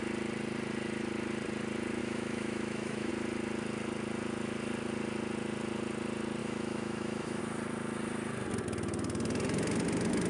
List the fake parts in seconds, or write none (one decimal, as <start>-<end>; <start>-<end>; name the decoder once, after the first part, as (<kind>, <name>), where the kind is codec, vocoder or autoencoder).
2.0-3.1 (autoencoder, DAC-VAE); 6.4-7.4

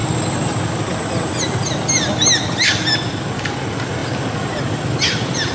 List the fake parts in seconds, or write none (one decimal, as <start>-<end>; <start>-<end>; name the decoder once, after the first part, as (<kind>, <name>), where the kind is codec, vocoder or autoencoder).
none